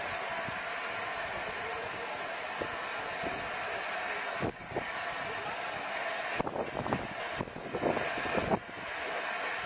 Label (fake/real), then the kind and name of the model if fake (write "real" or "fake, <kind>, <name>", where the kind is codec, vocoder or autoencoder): real